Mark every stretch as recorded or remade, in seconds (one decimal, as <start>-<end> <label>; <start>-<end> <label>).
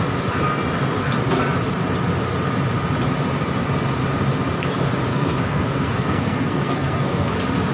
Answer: 0.0-5.1 recorded; 5.1-7.3 remade; 7.3-7.7 recorded